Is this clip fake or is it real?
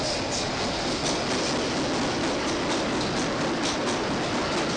real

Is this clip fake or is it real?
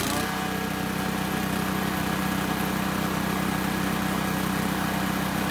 real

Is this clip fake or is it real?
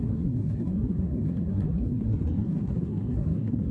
fake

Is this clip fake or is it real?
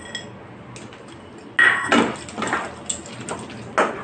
real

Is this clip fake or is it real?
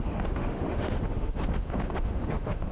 fake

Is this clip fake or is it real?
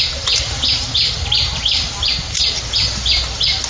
real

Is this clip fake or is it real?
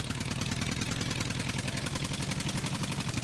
real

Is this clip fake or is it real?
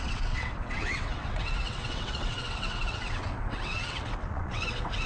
fake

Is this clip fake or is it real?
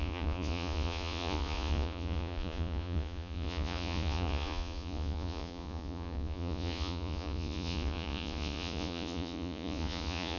fake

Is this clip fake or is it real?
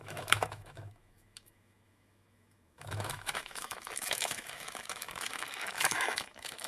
fake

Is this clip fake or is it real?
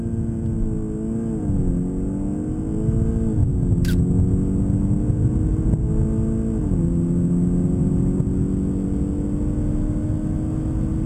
real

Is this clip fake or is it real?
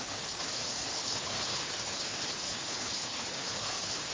fake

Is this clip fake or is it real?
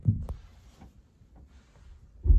real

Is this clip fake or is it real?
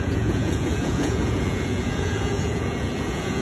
fake